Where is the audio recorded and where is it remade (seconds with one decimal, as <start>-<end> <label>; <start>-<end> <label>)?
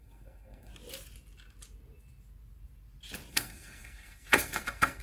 0.0-0.7 remade; 0.7-3.3 recorded; 3.3-5.0 remade